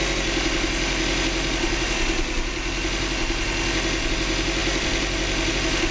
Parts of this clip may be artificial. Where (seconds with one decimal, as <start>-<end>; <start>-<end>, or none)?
4.6-5.5